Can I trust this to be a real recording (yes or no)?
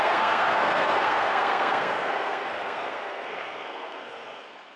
no